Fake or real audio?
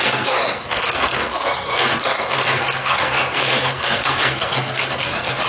fake